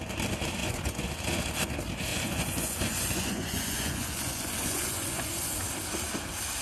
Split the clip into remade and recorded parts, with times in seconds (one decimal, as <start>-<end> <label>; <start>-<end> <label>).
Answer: 0.0-0.6 recorded; 0.6-1.1 remade; 1.1-2.1 recorded; 2.1-5.6 remade; 5.6-6.6 recorded